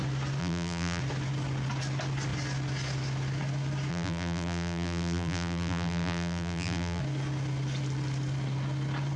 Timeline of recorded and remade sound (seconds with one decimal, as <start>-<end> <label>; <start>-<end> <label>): 0.0-0.4 recorded; 0.4-1.0 remade; 1.0-3.9 recorded; 3.9-7.0 remade; 7.0-9.2 recorded